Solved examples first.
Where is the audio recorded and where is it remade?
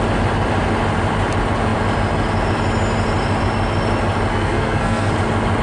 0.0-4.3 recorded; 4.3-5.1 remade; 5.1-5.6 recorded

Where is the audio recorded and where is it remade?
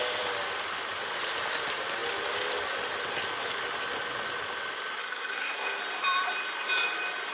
0.0-5.0 recorded; 5.0-5.8 remade; 5.8-7.3 recorded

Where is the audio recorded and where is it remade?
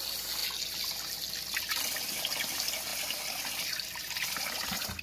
0.0-5.0 recorded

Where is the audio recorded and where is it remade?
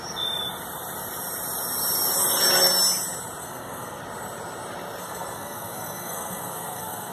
0.0-3.4 recorded; 3.4-4.0 remade; 4.0-5.0 recorded; 5.0-7.1 remade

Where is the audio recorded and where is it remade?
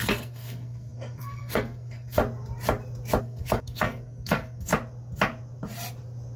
0.0-2.2 remade; 2.2-3.2 recorded; 3.2-4.7 remade; 4.7-6.4 recorded